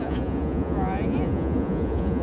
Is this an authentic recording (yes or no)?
no